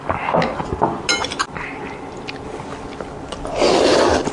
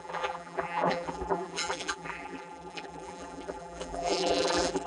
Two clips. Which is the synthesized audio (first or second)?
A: second